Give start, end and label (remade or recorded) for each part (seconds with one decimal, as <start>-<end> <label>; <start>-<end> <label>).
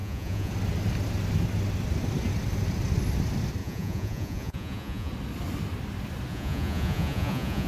0.0-0.5 remade; 0.5-3.6 recorded; 3.6-5.1 remade; 5.1-6.3 recorded; 6.3-7.7 remade